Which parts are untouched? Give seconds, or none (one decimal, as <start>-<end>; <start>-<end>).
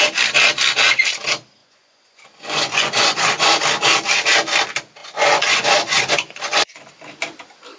0.0-1.6; 3.6-5.0; 6.9-7.8